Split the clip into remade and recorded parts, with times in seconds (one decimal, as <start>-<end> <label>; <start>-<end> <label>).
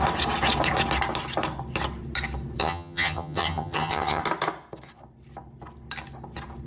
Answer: 0.0-2.6 recorded; 2.6-4.2 remade; 4.2-6.7 recorded